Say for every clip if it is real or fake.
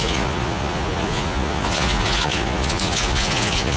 fake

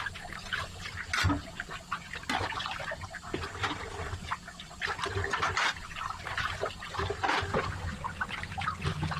real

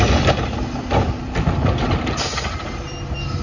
real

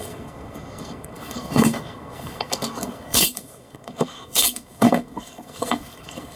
fake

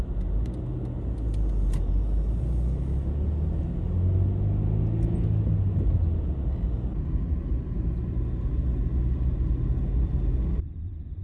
real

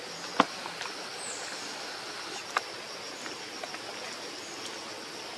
real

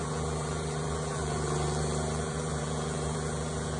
fake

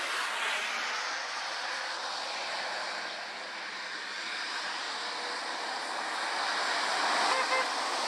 real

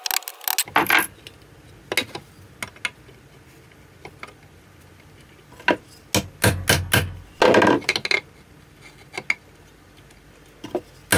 real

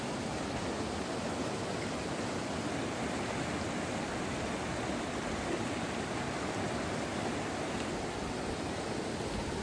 real